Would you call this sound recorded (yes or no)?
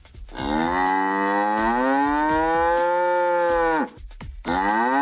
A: yes